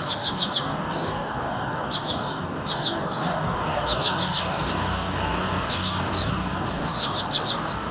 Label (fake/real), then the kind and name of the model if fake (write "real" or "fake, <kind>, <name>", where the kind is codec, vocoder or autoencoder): fake, codec, DAC